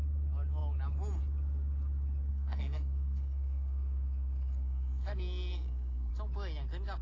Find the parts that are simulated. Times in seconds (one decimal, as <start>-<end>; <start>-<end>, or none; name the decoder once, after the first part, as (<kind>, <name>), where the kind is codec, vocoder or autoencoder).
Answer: 2.3-6.1 (codec, SNAC)